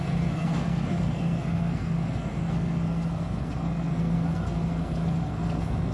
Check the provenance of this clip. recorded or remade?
remade